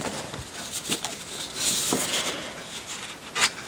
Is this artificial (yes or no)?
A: no